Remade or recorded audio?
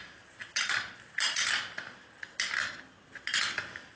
recorded